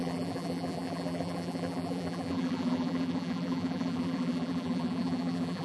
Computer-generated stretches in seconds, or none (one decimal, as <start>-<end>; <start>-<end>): 0.0-5.6